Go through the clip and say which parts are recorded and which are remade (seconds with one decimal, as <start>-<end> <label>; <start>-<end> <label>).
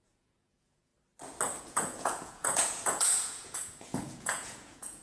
0.0-0.9 remade; 0.9-1.6 recorded; 1.6-5.0 remade